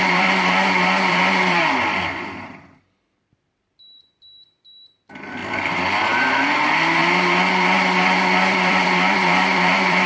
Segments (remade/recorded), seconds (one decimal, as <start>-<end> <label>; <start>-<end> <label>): 0.0-7.0 remade; 7.0-7.5 recorded; 7.5-10.1 remade